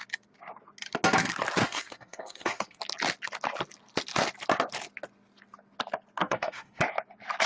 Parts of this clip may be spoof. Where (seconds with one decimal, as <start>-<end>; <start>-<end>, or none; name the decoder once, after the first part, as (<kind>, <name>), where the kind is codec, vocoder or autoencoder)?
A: 1.6-2.8 (codec, SNAC); 6.2-6.8